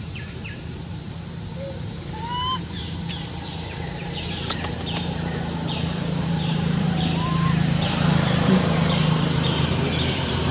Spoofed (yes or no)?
yes